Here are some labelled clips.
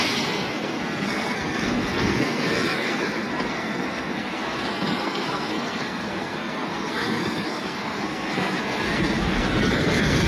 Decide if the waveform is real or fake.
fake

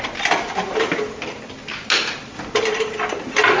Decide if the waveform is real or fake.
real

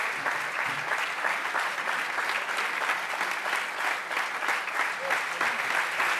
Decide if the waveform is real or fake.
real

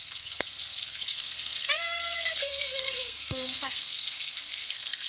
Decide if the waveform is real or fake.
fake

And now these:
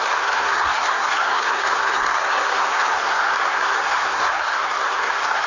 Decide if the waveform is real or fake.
fake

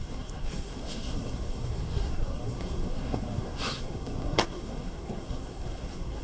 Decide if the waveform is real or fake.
fake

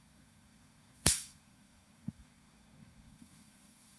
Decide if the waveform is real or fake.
fake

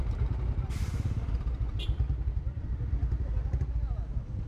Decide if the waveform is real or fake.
real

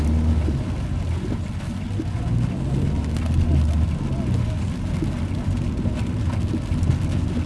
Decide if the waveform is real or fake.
real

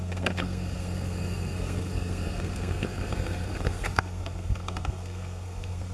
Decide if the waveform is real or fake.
fake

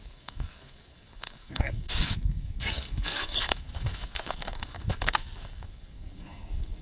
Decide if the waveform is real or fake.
fake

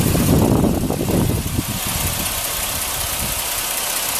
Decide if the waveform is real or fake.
real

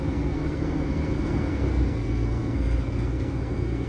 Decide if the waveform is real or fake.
fake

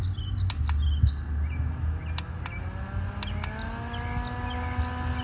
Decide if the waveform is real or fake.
real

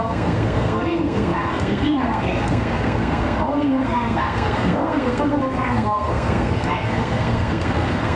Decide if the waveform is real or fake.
fake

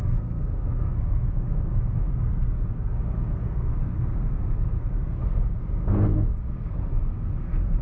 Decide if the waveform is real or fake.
fake